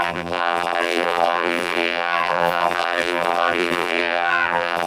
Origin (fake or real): fake